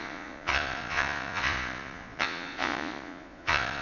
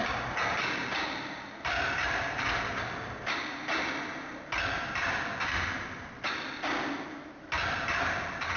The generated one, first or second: first